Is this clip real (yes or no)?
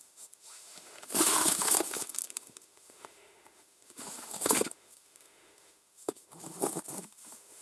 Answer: no